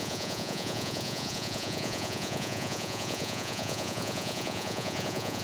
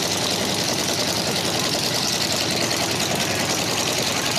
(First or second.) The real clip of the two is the second